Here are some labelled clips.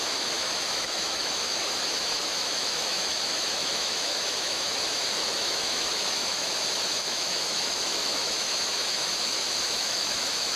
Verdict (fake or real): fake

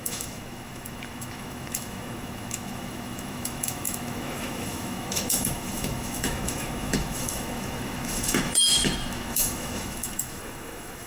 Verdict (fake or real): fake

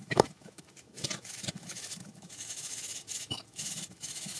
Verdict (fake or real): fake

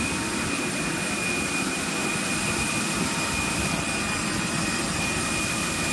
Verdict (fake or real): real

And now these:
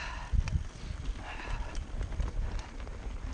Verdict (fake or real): real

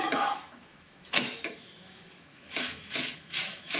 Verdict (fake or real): fake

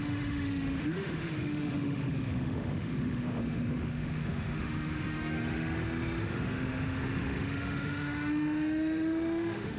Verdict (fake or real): fake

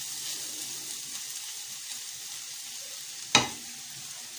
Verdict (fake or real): real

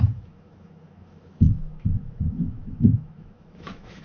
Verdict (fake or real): fake